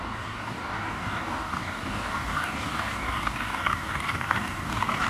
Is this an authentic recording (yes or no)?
no